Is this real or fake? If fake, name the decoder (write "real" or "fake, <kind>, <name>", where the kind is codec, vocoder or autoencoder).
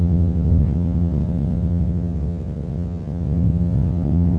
fake, vocoder, WaveNeXt